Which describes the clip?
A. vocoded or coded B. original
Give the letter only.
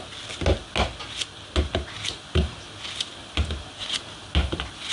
B